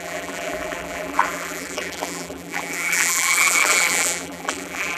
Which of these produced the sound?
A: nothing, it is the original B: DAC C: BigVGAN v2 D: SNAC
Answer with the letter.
C